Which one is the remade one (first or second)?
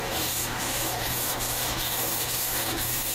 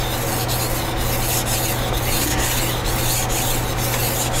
first